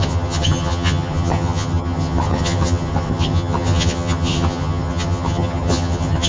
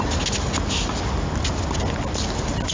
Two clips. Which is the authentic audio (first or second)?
second